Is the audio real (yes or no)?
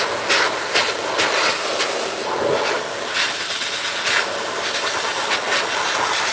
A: yes